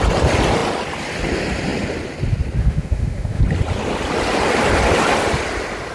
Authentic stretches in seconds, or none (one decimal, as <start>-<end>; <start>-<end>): 0.0-2.6; 3.4-5.9